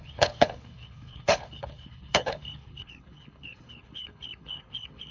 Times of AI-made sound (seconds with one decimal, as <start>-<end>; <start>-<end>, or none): 0.0-5.1